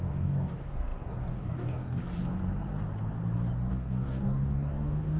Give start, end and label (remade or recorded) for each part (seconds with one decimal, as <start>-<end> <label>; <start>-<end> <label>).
0.0-2.0 remade; 2.0-3.7 recorded; 3.7-5.2 remade